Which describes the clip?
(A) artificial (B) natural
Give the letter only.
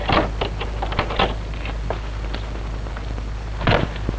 B